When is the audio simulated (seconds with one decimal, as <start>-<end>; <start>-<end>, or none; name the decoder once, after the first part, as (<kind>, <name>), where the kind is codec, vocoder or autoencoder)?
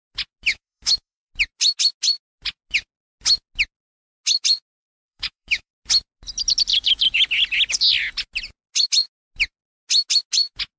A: 0.5-1.3 (autoencoder, DAC-VAE); 4.8-5.7; 6.7-7.2